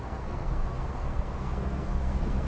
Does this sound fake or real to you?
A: fake